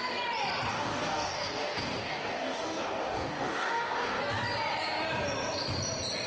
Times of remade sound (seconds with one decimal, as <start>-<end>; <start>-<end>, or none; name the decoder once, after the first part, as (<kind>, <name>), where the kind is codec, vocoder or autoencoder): 0.7-4.2 (codec, DAC)